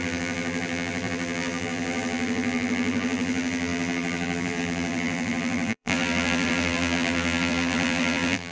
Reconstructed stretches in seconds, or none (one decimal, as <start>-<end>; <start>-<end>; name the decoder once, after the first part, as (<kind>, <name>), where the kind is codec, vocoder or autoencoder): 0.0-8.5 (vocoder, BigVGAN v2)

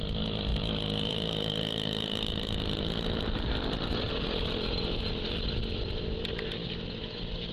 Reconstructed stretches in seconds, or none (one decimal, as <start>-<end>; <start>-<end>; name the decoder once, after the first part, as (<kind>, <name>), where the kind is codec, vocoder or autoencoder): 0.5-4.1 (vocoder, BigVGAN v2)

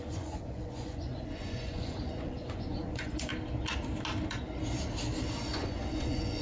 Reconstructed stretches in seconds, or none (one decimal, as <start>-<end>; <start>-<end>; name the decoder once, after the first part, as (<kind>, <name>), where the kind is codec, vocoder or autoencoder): 0.0-3.3 (vocoder, Vocos); 5.4-6.4

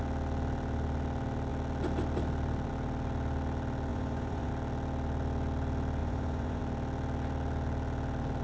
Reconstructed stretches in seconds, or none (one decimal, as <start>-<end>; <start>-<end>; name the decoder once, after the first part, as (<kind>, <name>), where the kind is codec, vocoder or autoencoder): 3.9-4.5 (vocoder, Vocos); 6.0-6.6

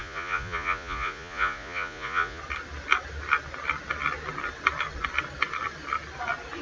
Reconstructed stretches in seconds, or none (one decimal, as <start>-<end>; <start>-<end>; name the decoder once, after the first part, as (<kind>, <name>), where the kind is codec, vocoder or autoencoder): 0.0-2.4 (vocoder, Vocos)

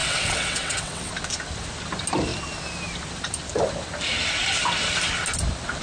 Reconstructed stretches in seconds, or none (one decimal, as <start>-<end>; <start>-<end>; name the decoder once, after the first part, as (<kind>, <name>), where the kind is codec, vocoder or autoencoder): 0.0-1.1 (vocoder, WaveNeXt)

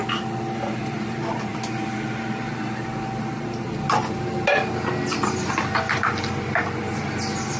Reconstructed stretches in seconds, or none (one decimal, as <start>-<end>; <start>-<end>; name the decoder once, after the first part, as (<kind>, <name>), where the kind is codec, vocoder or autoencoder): none